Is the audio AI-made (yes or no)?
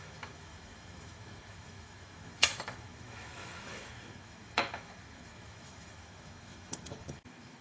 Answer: yes